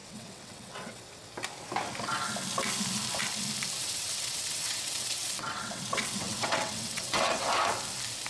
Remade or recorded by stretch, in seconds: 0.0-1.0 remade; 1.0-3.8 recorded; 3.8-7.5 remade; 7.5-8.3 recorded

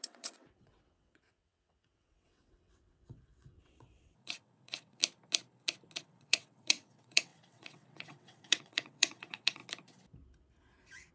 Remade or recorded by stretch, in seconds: 0.0-5.0 remade; 5.0-6.0 recorded; 6.0-9.6 remade; 9.6-11.1 recorded

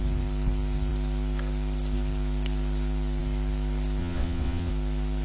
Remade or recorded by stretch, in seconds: 0.0-4.0 recorded; 4.0-4.7 remade; 4.7-5.2 recorded

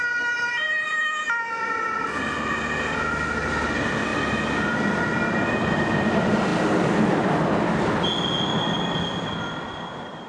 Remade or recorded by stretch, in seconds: 0.0-10.3 recorded

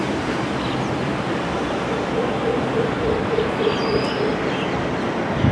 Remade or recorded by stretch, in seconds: 0.0-5.5 recorded

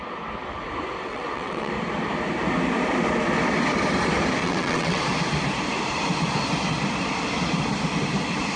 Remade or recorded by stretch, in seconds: 0.0-1.1 recorded; 1.1-1.7 remade; 1.7-4.4 recorded; 4.4-5.0 remade; 5.0-8.6 recorded

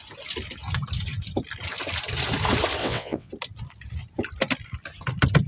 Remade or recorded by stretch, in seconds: 0.0-2.8 recorded; 2.8-3.3 remade; 3.3-5.5 recorded

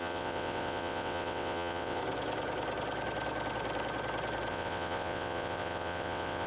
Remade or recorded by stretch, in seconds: 0.0-2.0 remade; 2.0-4.5 recorded; 4.5-6.5 remade